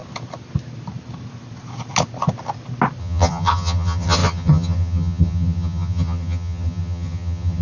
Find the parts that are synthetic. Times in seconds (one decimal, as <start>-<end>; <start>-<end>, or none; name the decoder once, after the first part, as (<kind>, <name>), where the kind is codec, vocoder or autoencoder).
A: 3.0-7.6 (vocoder, HiFi-GAN)